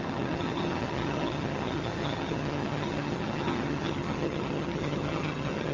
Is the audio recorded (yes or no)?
no